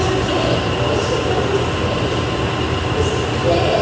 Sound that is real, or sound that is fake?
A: real